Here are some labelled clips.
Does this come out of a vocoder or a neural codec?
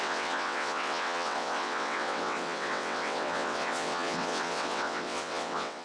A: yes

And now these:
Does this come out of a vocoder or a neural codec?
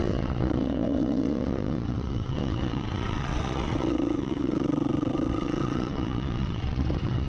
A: yes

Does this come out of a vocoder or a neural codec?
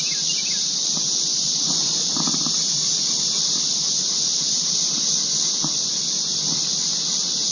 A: no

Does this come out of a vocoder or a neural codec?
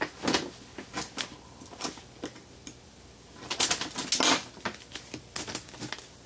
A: no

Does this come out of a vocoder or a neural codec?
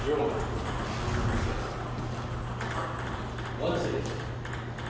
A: no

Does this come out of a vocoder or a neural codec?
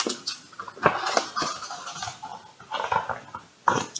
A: no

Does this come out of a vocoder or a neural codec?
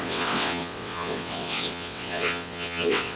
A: yes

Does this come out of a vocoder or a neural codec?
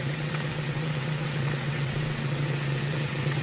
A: yes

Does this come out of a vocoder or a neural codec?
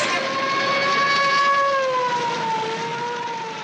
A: no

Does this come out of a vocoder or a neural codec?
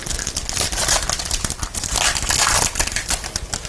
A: no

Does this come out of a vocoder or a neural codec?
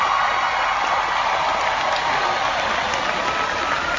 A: no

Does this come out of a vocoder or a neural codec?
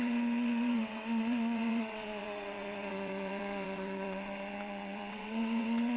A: yes